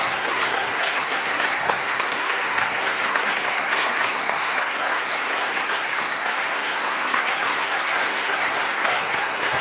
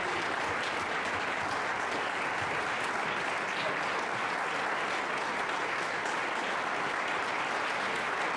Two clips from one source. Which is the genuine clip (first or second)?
second